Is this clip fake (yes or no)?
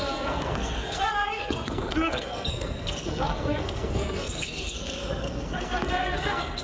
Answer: yes